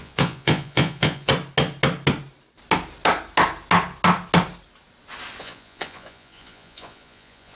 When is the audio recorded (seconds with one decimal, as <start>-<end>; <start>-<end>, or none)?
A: 1.3-5.4

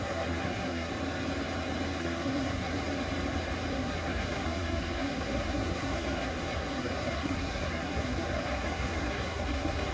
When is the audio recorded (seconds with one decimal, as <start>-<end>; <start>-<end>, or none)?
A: 0.9-2.0; 2.8-3.7

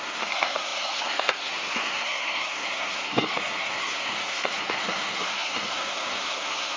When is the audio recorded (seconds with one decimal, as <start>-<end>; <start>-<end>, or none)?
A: none

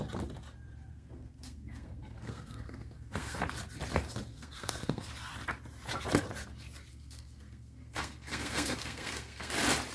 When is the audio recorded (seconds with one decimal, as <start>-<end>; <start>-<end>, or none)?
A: 0.0-0.9; 3.4-4.3; 5.1-6.9; 9.5-9.9

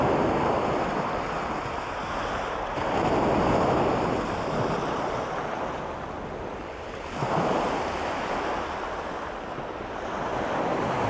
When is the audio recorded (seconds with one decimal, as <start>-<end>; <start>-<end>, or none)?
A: 0.0-11.1